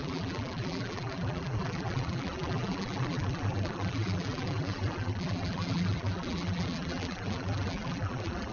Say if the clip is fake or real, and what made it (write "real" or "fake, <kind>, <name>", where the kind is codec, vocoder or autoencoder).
fake, vocoder, BigVGAN v2